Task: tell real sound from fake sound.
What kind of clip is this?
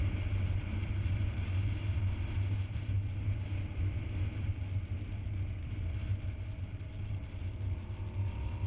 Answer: real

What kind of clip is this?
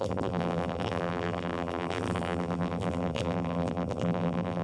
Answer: fake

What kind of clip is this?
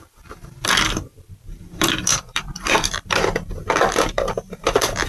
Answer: fake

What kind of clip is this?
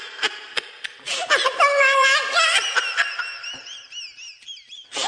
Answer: fake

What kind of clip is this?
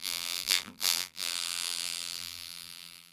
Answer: fake